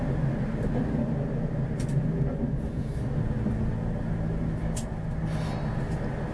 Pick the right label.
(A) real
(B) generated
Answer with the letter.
A